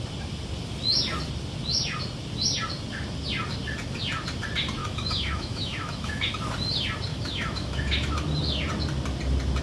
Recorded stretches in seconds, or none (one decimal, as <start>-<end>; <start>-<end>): 0.0-4.8; 6.3-7.1; 8.1-9.6